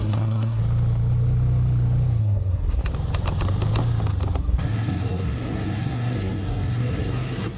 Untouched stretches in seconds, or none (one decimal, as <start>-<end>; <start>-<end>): 0.6-2.2; 2.8-4.4